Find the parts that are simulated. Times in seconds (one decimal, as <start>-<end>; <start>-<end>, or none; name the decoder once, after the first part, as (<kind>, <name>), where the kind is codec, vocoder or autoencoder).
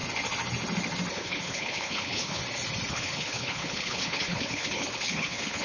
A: 1.1-2.4 (codec, HILCodec); 2.9-5.6